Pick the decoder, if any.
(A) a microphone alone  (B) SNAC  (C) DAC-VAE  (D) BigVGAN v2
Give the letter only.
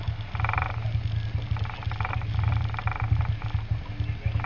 A